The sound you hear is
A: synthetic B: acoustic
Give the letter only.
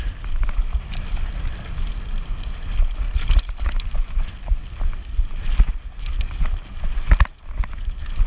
B